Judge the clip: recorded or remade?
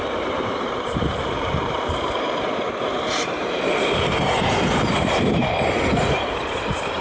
remade